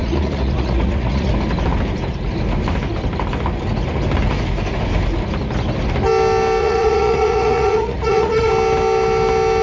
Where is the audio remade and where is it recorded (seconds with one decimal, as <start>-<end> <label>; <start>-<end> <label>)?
0.0-1.3 remade; 1.3-6.6 recorded; 6.6-8.5 remade; 8.5-9.6 recorded